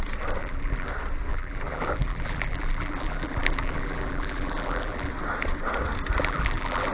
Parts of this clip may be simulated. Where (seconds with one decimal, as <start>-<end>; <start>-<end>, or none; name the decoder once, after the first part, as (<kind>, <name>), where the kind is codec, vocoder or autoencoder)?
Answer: 0.4-0.9 (vocoder, BigVGAN v2); 1.3-5.1; 6.2-6.9